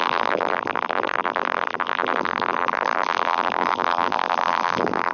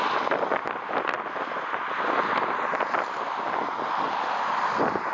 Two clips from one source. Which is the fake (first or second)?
first